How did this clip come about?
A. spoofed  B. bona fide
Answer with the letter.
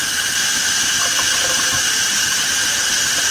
B